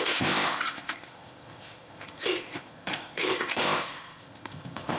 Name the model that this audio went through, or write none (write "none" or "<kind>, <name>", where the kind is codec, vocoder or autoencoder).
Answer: codec, ZipCodec